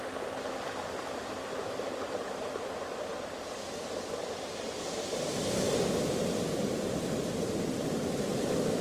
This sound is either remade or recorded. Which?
recorded